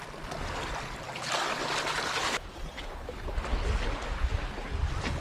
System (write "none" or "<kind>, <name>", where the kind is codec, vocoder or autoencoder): none